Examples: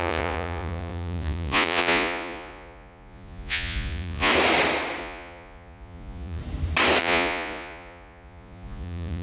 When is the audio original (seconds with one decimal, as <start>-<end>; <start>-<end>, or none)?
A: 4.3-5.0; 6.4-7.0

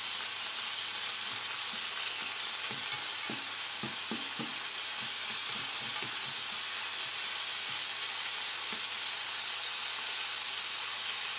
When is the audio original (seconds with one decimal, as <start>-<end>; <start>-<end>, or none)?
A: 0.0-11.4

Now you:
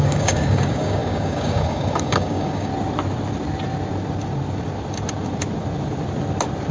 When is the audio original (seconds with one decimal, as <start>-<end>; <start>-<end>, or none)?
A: 2.7-6.7

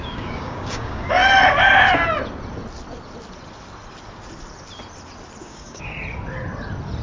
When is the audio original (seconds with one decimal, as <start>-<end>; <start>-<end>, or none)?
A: 1.2-5.4; 5.9-7.0

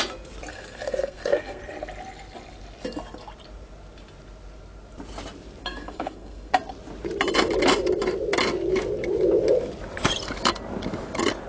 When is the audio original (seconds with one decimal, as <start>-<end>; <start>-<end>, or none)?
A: 0.0-0.5; 1.6-5.6; 6.5-11.5

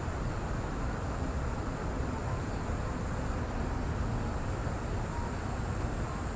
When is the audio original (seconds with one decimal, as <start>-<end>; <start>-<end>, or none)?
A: 0.0-6.4

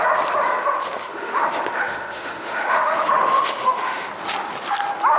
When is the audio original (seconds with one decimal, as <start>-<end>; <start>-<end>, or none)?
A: 0.0-1.0; 4.1-5.2

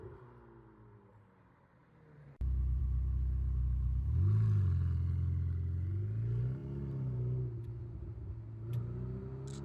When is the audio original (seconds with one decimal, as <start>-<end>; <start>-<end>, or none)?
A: 0.0-9.6